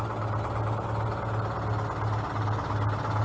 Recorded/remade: recorded